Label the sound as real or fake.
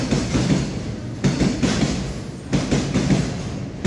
real